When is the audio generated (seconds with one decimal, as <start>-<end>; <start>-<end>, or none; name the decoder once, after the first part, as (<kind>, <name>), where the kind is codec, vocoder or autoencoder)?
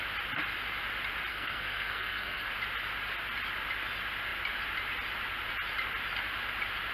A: 1.3-2.5 (codec, SNAC)